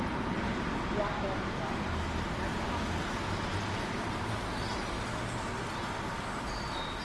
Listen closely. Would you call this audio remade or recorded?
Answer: recorded